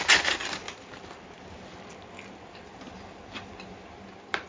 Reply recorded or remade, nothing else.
remade